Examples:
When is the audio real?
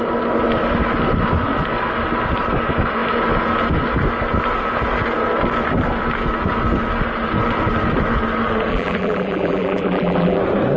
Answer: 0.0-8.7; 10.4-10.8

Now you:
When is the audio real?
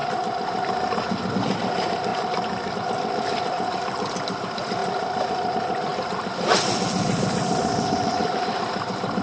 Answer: 0.0-1.3; 2.1-2.7; 4.8-5.5; 5.9-7.6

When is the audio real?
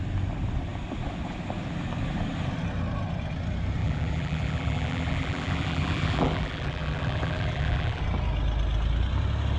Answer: 0.0-3.8; 8.0-9.6